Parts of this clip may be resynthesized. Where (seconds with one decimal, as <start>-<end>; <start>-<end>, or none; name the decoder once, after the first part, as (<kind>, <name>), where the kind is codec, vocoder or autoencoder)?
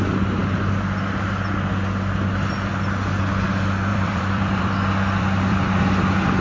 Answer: 3.9-5.8 (vocoder, BigVGAN v2)